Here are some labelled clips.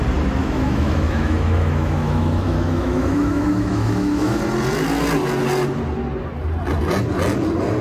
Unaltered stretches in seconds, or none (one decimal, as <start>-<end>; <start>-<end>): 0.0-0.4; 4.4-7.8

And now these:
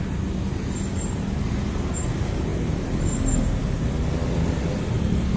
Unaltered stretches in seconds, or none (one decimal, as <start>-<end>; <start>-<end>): 0.0-5.4

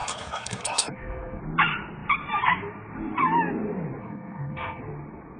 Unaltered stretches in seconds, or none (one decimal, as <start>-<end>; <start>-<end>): 1.4-4.0; 4.8-5.4

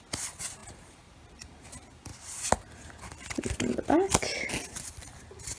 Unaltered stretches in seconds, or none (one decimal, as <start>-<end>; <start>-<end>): 0.0-0.6; 1.7-5.6

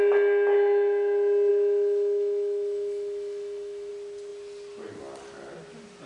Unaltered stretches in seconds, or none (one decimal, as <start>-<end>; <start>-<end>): 0.0-1.5; 3.9-6.1

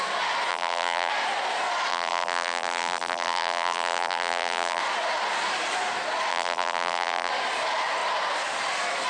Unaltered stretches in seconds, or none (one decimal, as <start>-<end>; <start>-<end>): 0.0-0.5; 1.1-1.9; 4.8-6.3; 7.3-9.1

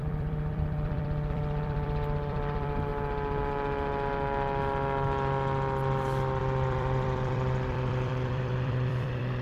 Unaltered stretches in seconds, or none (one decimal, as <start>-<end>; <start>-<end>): 2.9-6.4

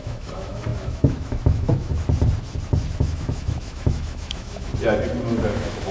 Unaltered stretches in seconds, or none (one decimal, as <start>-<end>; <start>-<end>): 1.9-3.0; 4.7-5.4